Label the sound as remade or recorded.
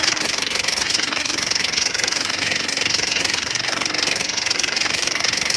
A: remade